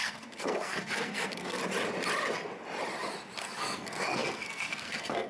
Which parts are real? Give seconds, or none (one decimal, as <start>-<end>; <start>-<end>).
1.6-3.4